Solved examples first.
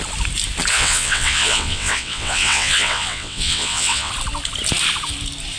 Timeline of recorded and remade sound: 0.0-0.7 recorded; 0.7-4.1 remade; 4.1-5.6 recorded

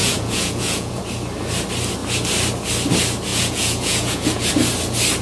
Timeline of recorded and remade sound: 0.0-1.0 remade; 1.0-3.3 recorded; 3.3-4.5 remade; 4.5-5.2 recorded

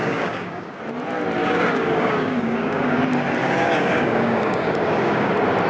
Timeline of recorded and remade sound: 0.0-0.8 remade; 0.8-1.4 recorded; 1.4-3.0 remade; 3.0-3.4 recorded; 3.4-5.3 remade; 5.3-5.7 recorded

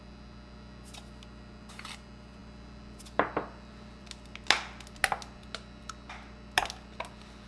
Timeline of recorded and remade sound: 0.0-7.5 recorded